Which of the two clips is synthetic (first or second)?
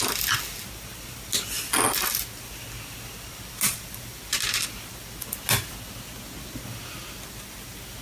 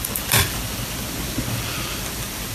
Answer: second